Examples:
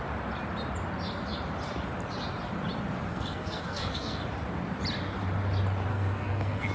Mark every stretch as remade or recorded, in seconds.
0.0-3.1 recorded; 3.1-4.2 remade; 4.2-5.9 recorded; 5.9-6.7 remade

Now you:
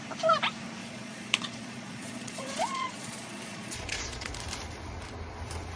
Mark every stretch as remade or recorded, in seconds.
0.0-0.8 recorded; 0.8-4.3 remade; 4.3-5.8 recorded

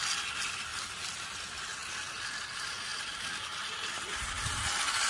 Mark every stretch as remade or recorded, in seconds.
0.0-5.1 recorded

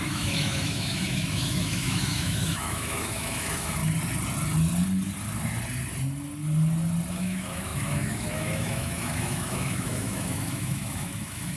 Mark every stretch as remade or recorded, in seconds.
0.0-3.8 remade; 3.8-7.1 recorded; 7.1-11.6 remade

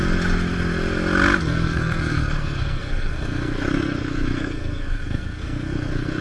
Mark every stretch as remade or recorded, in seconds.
0.0-1.4 recorded; 1.4-6.2 remade